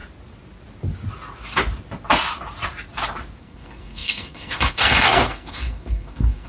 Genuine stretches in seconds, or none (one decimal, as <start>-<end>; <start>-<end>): 0.0-3.4